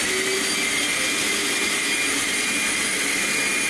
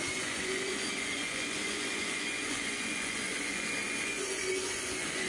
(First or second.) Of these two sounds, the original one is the first